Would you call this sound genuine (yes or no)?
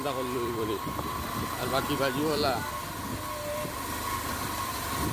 yes